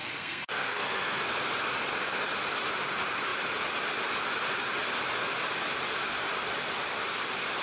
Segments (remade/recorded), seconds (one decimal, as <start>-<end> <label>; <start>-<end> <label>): 0.0-1.3 remade; 1.3-7.6 recorded